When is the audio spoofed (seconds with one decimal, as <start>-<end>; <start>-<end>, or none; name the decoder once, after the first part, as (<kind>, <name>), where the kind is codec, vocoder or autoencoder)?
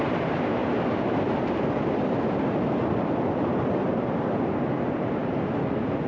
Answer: none